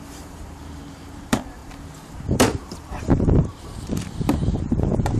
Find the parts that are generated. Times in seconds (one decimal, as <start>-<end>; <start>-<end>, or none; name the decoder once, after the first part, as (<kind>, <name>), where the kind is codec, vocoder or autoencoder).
0.0-5.2 (vocoder, BigVGAN v2)